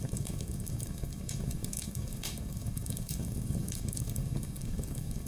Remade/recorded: remade